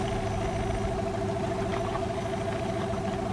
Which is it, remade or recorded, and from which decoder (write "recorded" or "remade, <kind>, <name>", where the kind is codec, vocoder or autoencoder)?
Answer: recorded